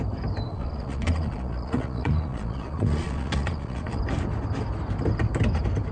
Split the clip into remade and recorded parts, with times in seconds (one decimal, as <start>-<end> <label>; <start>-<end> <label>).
0.0-0.5 recorded; 0.5-4.0 remade; 4.0-5.9 recorded